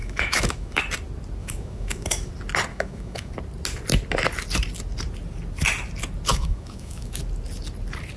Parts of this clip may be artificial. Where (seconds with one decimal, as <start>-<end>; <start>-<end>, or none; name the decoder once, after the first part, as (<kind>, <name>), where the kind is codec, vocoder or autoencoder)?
0.0-0.8 (autoencoder, DAC-VAE); 1.4-2.3; 2.7-3.3; 6.3-7.2